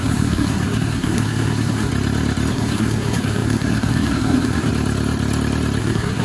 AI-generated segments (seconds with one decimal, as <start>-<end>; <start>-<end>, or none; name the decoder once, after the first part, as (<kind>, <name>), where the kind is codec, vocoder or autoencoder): 0.0-1.9 (codec, SNAC); 2.5-4.7; 5.8-6.2